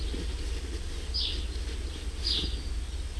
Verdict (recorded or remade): recorded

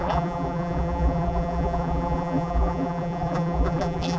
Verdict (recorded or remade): remade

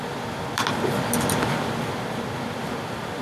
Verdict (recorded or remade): remade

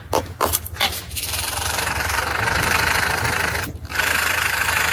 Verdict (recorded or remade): remade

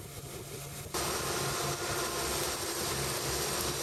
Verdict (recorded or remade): recorded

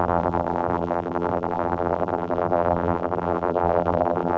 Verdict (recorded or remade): remade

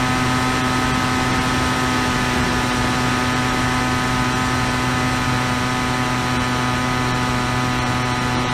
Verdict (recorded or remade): recorded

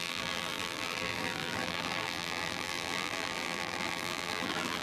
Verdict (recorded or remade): remade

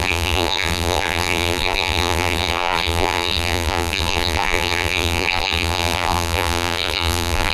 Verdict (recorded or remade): remade